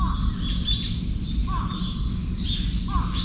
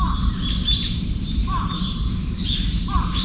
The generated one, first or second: second